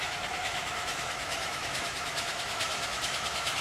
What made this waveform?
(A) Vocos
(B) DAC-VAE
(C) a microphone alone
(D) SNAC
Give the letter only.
B